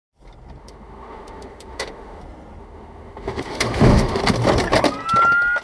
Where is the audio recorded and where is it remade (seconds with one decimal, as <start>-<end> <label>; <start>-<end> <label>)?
0.0-0.6 recorded; 0.6-2.2 remade; 2.2-2.6 recorded; 2.6-4.2 remade; 4.2-5.6 recorded